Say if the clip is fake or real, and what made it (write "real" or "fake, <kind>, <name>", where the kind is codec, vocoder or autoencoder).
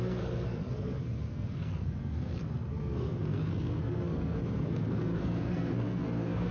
fake, codec, SNAC